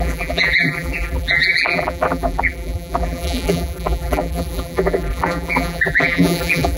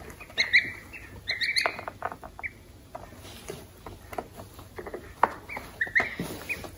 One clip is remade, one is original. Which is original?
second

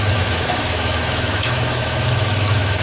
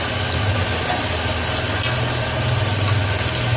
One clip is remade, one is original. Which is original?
second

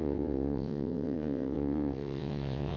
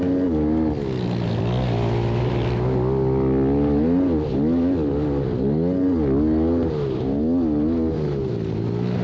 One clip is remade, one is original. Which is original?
second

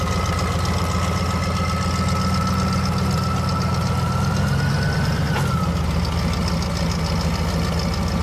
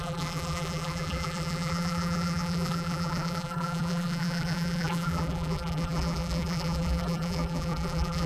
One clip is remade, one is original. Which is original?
first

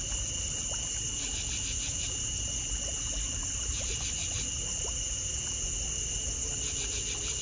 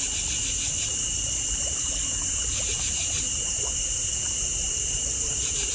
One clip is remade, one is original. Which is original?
first